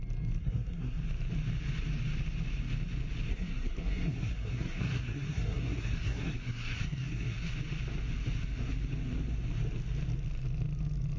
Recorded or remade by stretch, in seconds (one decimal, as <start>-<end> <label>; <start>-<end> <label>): 0.0-0.4 recorded; 0.4-1.0 remade; 1.0-3.3 recorded; 3.3-7.5 remade; 7.5-11.2 recorded